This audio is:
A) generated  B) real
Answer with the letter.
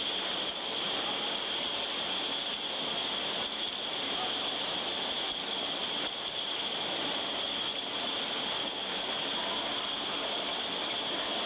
B